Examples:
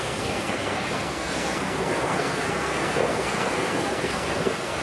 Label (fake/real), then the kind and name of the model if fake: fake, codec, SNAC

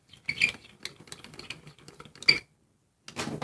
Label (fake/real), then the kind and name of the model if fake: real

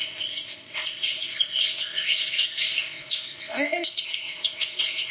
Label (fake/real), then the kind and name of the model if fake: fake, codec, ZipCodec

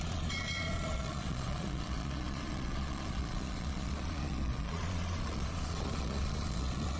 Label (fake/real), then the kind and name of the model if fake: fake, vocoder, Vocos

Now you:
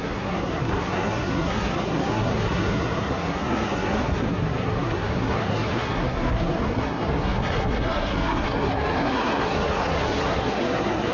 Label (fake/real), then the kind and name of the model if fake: fake, codec, SNAC